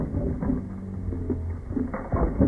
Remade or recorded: recorded